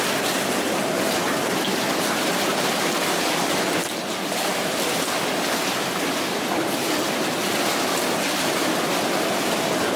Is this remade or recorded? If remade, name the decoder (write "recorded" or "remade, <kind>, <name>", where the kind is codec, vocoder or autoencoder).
recorded